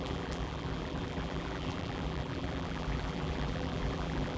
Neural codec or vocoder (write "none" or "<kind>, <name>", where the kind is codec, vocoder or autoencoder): vocoder, BigVGAN v2